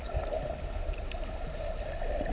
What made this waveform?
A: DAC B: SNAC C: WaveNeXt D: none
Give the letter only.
D